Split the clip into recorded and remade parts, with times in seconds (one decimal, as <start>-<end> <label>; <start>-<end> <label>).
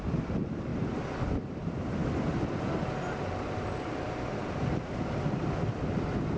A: 0.0-6.4 recorded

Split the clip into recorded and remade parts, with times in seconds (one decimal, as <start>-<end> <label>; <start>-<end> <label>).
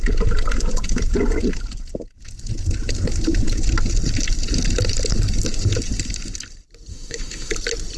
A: 0.0-6.9 recorded; 6.9-7.5 remade; 7.5-8.0 recorded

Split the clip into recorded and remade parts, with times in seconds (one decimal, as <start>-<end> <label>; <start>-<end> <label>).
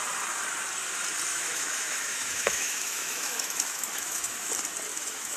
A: 0.0-1.3 recorded; 1.3-4.5 remade; 4.5-4.9 recorded; 4.9-5.4 remade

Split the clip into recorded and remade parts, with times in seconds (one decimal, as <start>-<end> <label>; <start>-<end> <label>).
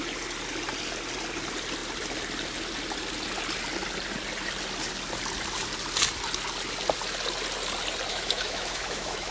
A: 0.0-8.1 recorded; 8.1-9.3 remade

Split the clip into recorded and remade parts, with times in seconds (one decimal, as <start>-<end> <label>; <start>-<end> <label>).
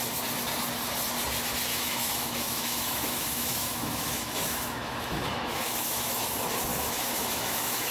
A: 0.0-1.7 recorded; 1.7-6.2 remade; 6.2-6.7 recorded; 6.7-7.9 remade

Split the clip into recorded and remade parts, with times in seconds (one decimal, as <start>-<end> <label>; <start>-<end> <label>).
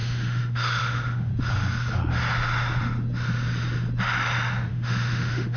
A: 0.0-1.3 remade; 1.3-4.7 recorded; 4.7-5.6 remade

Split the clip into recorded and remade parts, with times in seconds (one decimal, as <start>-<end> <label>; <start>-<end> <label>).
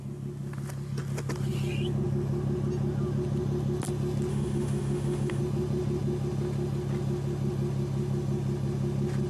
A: 0.0-4.3 recorded; 4.3-5.4 remade; 5.4-9.3 recorded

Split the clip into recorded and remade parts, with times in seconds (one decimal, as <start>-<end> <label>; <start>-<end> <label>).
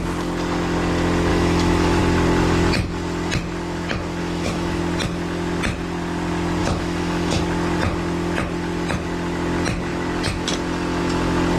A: 0.0-1.3 recorded; 1.3-2.0 remade; 2.0-4.2 recorded; 4.2-4.8 remade; 4.8-6.6 recorded; 6.6-7.4 remade; 7.4-11.6 recorded